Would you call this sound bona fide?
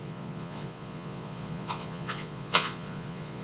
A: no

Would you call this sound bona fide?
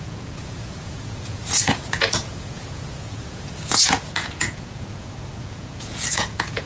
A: no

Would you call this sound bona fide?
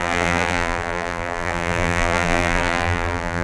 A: no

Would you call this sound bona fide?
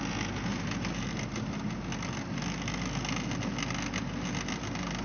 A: yes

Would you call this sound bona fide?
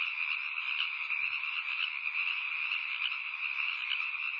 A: yes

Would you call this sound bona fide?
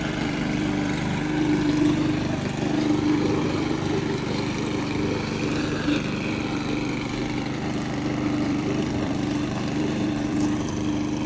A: no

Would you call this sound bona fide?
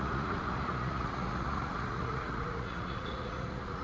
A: no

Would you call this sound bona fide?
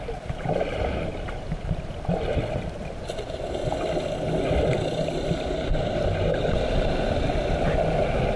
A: yes